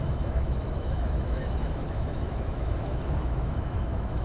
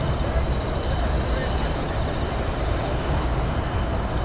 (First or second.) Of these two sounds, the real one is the second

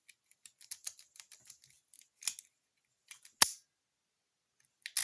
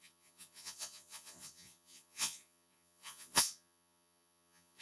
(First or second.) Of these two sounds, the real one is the first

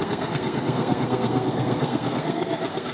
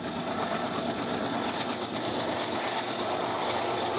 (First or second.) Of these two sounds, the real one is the second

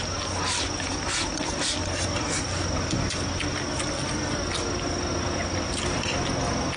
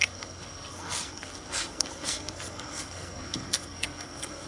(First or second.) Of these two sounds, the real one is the first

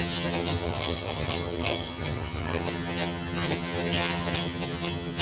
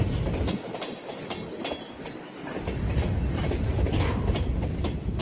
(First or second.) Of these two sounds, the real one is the second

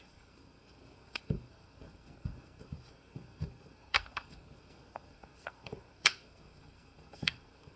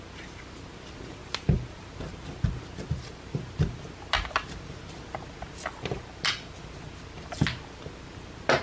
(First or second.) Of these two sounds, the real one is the second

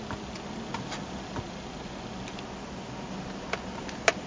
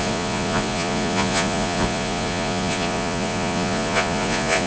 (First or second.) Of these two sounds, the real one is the first